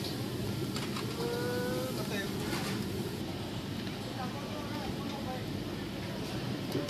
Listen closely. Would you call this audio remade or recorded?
recorded